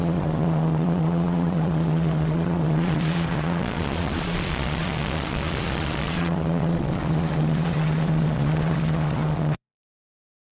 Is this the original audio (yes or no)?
no